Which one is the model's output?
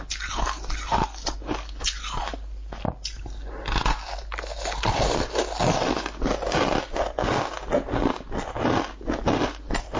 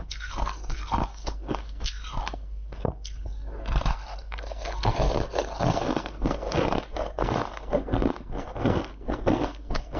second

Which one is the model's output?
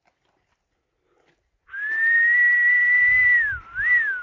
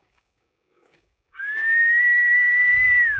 second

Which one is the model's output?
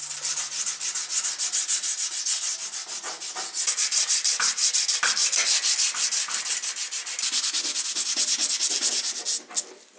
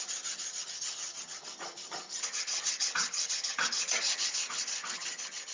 second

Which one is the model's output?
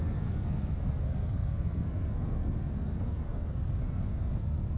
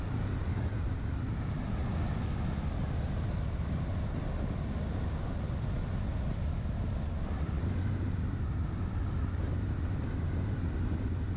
first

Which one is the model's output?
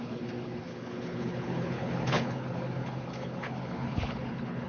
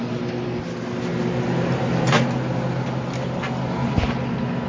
first